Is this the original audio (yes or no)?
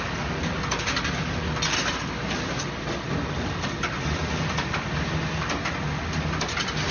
yes